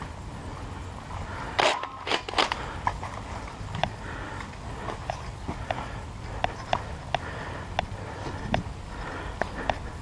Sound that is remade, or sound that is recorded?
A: recorded